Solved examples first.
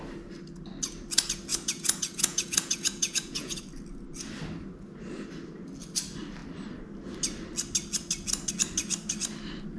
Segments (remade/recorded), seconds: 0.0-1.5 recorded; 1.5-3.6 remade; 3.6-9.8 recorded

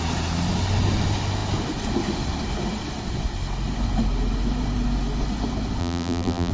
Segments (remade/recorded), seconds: 0.0-5.8 recorded; 5.8-6.5 remade

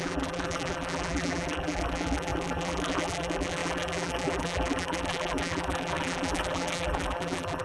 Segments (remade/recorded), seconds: 0.0-7.6 remade

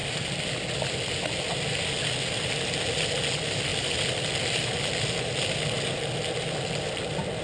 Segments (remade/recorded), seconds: 0.0-7.4 recorded

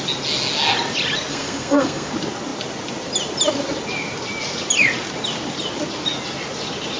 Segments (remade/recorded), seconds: 0.0-1.3 recorded; 1.3-2.1 remade; 2.1-7.0 recorded

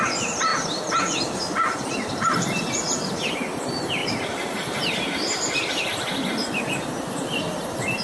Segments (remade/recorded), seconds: 0.0-8.0 remade

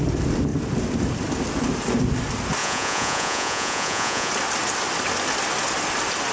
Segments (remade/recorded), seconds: 0.0-2.6 recorded; 2.6-4.3 remade; 4.3-6.3 recorded